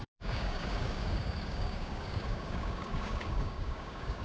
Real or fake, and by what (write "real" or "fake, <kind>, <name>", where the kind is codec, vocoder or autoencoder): fake, codec, DAC